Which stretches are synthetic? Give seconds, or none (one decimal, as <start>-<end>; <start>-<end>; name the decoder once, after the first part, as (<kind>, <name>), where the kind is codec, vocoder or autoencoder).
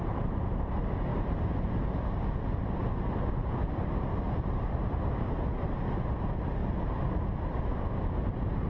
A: none